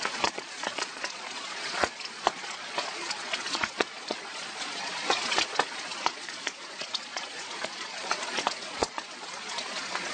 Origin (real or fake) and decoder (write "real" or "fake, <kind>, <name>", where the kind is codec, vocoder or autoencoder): fake, vocoder, Vocos